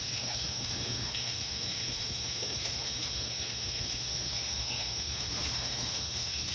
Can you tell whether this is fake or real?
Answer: fake